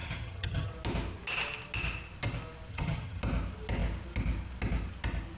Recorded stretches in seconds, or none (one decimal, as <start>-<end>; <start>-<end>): 0.7-2.7; 3.2-5.4